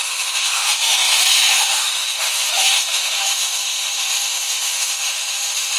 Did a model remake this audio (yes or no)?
yes